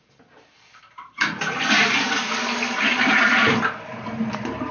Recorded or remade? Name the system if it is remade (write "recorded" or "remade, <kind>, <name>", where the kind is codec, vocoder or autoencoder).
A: remade, vocoder, BigVGAN v2